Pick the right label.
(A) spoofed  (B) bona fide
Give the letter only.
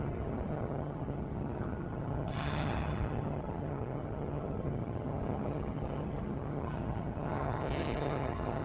A